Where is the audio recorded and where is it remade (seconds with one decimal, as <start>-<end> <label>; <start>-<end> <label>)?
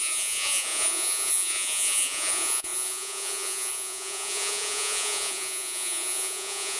0.0-6.8 remade